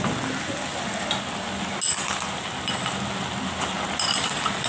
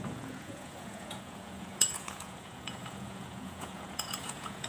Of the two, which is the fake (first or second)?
second